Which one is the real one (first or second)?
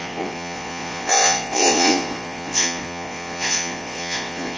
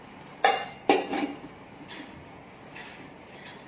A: second